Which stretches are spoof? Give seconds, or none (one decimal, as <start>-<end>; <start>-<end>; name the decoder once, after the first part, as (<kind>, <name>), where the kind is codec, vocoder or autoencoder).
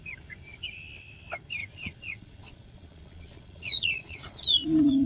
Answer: 1.6-5.1 (vocoder, Vocos)